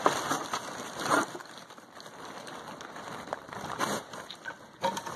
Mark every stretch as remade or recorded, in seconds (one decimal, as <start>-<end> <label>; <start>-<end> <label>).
0.0-5.2 recorded